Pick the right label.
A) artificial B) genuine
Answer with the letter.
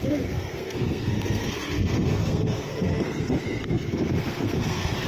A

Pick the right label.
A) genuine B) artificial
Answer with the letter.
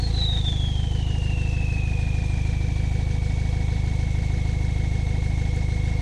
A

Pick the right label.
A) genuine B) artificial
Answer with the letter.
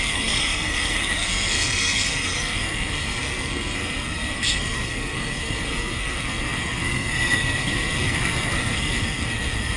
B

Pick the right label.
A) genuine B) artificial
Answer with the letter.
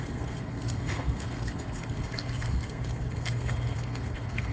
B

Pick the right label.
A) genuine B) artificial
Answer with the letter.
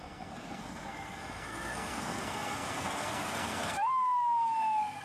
B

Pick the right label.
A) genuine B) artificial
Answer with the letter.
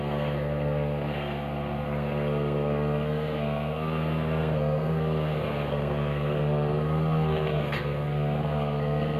B